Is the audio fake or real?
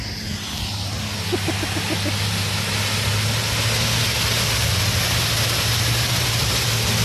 real